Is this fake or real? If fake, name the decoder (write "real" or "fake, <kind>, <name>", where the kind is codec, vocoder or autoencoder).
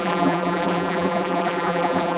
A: fake, vocoder, BigVGAN v2